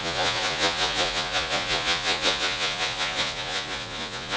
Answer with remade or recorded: remade